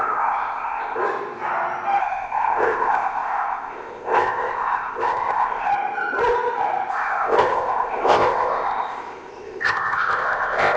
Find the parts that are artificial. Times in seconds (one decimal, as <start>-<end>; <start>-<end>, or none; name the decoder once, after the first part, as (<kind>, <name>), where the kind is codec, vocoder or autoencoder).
0.0-1.0 (codec, ZipCodec); 2.0-5.7; 6.9-10.8